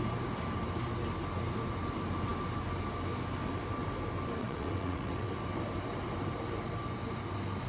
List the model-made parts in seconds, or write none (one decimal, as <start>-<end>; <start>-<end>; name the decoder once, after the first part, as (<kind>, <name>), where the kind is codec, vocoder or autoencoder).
4.4-5.3 (vocoder, WaveNeXt)